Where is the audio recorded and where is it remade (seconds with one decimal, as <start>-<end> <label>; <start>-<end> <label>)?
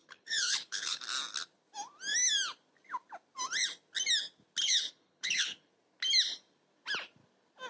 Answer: 0.0-1.0 remade; 1.0-4.6 recorded; 4.6-5.7 remade; 5.7-7.7 recorded